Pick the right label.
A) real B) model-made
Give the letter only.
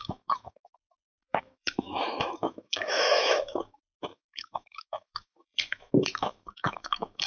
B